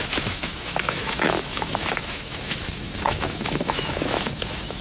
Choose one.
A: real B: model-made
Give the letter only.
B